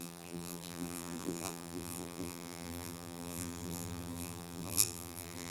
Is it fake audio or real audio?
fake